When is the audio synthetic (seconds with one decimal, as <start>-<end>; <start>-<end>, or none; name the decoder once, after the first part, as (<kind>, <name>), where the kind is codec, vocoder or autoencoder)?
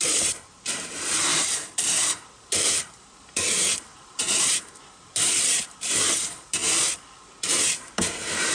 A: 0.0-6.6 (vocoder, BigVGAN v2); 7.8-8.5